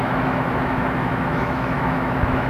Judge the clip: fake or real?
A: fake